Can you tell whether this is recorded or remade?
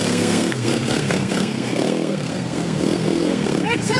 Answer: remade